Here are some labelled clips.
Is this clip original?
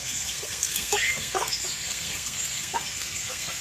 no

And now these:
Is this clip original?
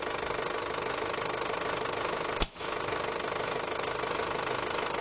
yes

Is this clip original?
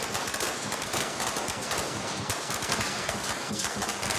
no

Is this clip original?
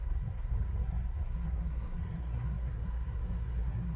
no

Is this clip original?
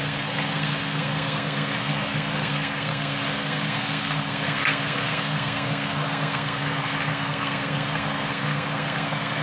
no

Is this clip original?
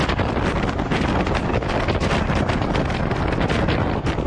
yes